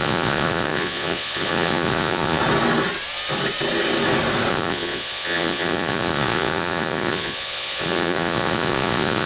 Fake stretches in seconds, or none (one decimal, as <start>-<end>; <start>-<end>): 0.0-2.4; 4.5-9.3